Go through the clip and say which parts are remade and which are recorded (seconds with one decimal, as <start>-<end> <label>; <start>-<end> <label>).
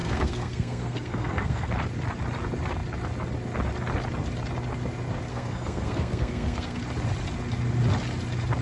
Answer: 0.0-1.7 remade; 1.7-5.3 recorded; 5.3-6.8 remade; 6.8-8.6 recorded